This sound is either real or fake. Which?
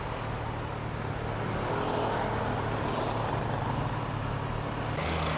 real